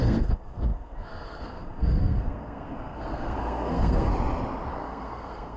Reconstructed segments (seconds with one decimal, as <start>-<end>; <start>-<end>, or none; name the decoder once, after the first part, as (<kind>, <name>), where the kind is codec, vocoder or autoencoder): 0.0-4.1 (codec, SNAC); 4.7-5.6